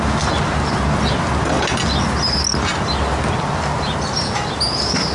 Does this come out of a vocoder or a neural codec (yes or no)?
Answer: no